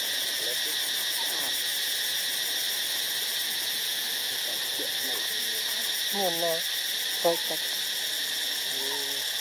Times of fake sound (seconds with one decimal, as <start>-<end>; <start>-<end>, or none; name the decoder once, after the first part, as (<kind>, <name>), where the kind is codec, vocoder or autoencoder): none